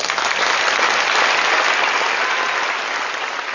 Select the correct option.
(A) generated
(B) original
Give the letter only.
B